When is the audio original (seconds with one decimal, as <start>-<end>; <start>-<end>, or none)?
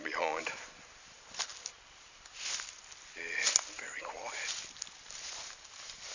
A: 1.5-5.2